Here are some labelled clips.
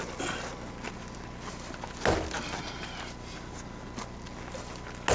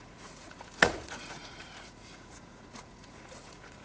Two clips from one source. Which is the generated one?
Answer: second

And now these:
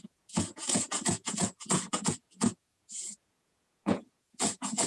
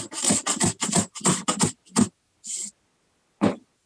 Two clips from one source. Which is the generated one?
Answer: first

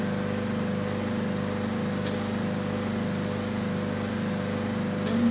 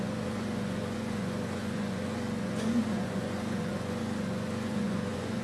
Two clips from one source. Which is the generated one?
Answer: second